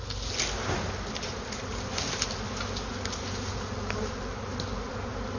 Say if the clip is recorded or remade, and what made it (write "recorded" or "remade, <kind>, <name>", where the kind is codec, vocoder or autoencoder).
recorded